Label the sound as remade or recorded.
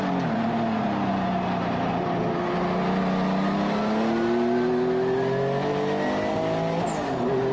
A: recorded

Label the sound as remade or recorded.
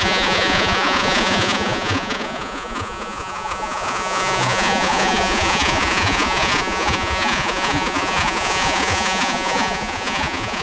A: remade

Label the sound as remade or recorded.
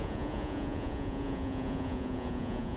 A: remade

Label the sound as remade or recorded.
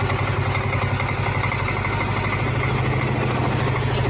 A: recorded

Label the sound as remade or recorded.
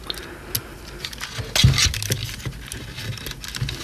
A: recorded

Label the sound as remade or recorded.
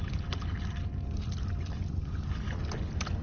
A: recorded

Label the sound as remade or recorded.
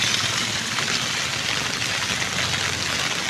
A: recorded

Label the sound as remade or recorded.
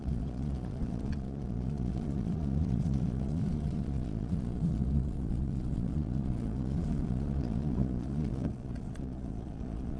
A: remade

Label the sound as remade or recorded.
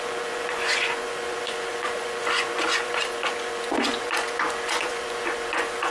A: remade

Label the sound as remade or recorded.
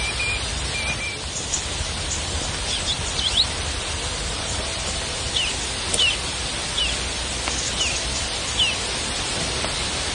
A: recorded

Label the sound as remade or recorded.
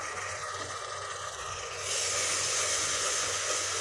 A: remade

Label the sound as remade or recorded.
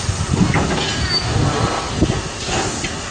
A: recorded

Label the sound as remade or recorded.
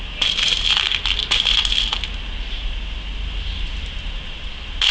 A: recorded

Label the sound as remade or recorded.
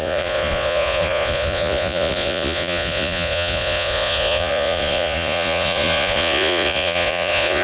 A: remade